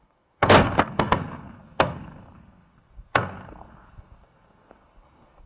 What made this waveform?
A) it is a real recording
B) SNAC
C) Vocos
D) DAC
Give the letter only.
B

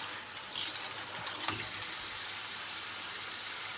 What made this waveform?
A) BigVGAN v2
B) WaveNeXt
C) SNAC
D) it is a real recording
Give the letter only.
D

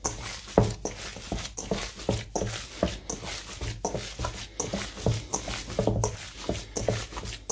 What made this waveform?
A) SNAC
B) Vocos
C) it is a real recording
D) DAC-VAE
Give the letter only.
C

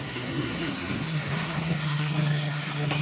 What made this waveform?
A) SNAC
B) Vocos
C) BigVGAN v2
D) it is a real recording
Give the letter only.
A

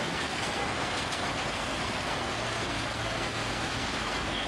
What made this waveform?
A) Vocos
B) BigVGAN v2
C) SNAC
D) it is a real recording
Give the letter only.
C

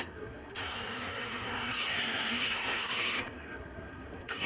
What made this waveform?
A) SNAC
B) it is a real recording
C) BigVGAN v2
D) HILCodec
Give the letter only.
A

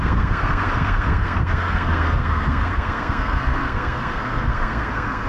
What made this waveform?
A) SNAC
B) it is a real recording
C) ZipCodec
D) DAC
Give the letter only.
A